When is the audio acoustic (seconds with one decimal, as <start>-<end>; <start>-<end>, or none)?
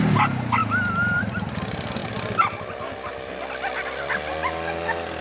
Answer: 0.0-5.2